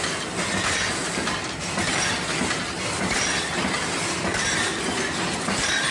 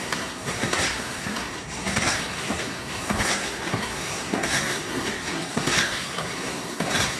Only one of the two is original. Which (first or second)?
first